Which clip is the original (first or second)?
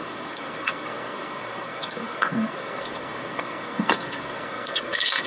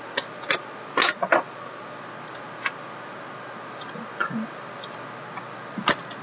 second